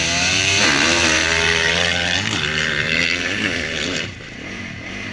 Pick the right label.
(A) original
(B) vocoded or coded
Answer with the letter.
B